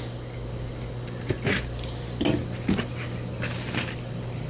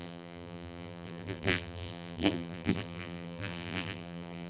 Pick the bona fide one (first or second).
first